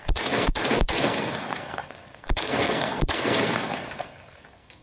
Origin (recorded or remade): remade